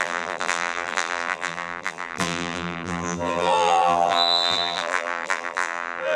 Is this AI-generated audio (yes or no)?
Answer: yes